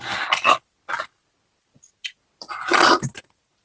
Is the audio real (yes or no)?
yes